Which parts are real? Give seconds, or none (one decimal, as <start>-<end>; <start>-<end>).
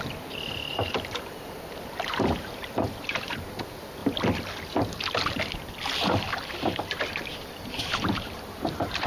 0.0-0.7; 3.6-7.3